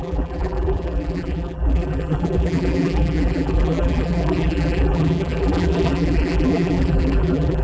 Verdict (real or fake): fake